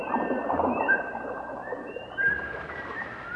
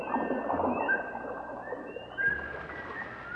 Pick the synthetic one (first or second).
first